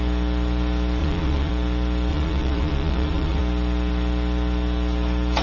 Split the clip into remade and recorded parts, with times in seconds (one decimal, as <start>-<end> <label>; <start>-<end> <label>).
0.0-1.0 recorded; 1.0-1.5 remade; 1.5-2.1 recorded; 2.1-3.4 remade; 3.4-5.4 recorded